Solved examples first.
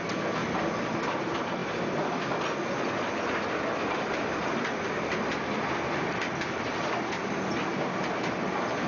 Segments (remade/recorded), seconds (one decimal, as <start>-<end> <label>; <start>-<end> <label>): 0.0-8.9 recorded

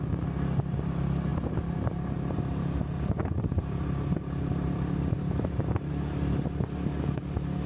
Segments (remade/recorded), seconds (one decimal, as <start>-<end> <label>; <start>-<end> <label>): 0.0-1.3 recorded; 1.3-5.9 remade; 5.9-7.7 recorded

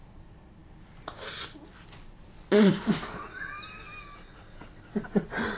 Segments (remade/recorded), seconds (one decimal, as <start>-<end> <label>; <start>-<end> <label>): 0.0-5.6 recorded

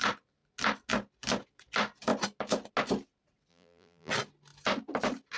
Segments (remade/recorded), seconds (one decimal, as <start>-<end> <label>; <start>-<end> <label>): 0.0-3.5 recorded; 3.5-4.1 remade; 4.1-5.4 recorded

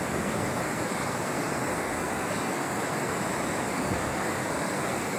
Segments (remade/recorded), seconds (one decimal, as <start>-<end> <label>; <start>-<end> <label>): 0.0-3.1 remade; 3.1-3.6 recorded; 3.6-5.2 remade

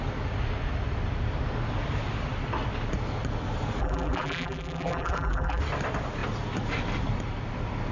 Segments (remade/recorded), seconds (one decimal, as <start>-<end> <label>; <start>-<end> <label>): 0.0-3.8 recorded; 3.8-5.6 remade; 5.6-7.9 recorded

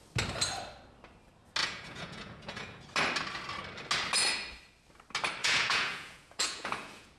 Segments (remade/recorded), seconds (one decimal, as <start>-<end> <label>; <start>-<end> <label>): 0.0-1.6 recorded; 1.6-2.8 remade; 2.8-5.4 recorded; 5.4-7.2 remade

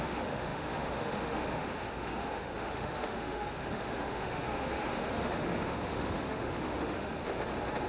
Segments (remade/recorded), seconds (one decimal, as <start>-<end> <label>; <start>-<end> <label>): 0.0-7.2 remade; 7.2-7.9 recorded